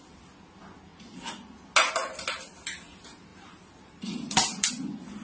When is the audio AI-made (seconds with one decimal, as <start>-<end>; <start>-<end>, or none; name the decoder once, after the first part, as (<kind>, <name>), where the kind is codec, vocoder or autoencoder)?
3.3-4.7 (vocoder, BigVGAN v2)